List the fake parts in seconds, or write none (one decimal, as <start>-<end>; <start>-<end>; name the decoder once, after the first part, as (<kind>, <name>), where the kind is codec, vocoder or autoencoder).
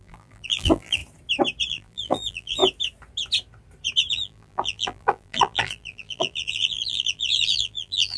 0.0-1.0 (vocoder, BigVGAN v2); 1.7-2.6; 4.1-8.2